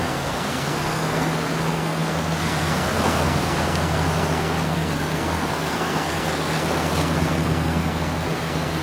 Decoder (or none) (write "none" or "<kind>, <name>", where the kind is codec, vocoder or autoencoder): codec, SNAC